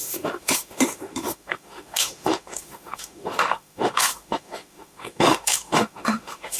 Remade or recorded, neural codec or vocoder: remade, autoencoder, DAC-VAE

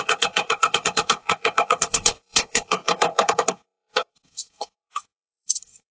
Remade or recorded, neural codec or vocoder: remade, codec, SNAC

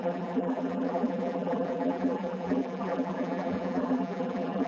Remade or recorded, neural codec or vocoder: remade, vocoder, BigVGAN v2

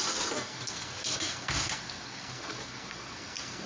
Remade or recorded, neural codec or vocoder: remade, codec, SNAC